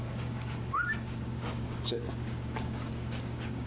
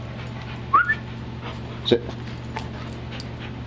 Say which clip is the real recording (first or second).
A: second